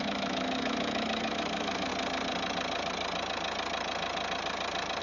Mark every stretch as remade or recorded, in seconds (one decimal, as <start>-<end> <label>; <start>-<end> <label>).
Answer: 0.0-1.9 remade; 1.9-5.0 recorded